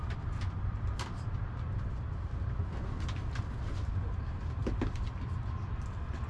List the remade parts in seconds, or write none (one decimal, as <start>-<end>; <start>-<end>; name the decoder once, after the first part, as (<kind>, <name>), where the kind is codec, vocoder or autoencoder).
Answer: none